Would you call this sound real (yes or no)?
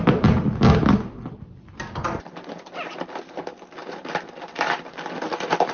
yes